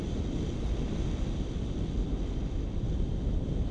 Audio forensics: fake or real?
real